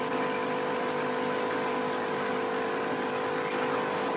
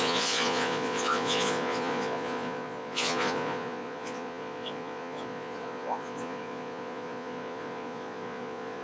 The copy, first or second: second